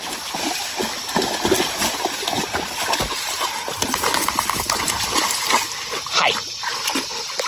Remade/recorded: recorded